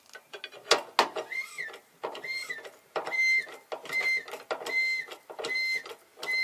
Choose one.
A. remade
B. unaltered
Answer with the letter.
B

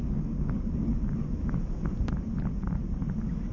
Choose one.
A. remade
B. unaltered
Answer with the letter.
B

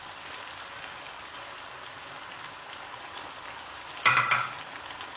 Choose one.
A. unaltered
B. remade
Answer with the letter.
A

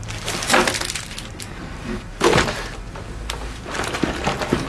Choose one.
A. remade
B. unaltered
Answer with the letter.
B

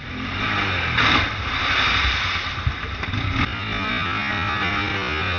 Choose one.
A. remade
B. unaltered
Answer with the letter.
B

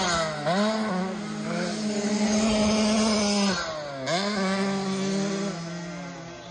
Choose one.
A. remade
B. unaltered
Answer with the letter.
B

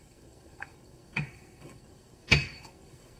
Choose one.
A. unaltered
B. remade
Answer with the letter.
B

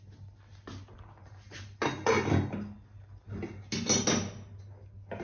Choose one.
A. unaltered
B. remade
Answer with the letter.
A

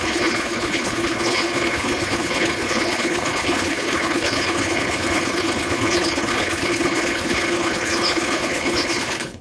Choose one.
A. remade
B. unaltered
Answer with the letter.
A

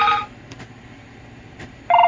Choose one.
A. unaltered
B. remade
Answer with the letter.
B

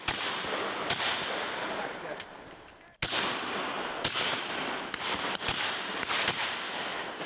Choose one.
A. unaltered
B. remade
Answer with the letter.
A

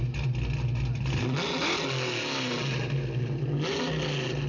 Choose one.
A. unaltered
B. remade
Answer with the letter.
A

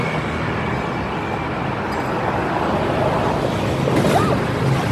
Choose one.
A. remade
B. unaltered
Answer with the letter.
B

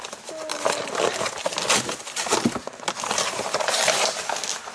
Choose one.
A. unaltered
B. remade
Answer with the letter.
A